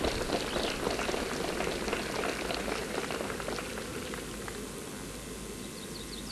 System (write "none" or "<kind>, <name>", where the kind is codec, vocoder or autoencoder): none